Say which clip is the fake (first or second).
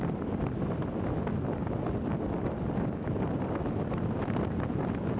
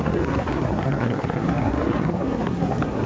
second